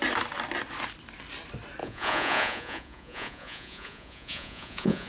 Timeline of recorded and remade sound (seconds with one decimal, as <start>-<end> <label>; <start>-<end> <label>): 0.0-1.8 recorded; 1.8-5.1 remade